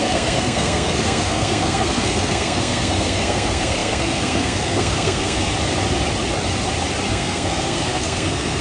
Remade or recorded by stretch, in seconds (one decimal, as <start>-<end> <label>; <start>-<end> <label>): 0.0-5.5 remade; 5.5-7.1 recorded; 7.1-8.6 remade